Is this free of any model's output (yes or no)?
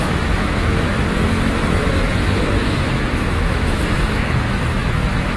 no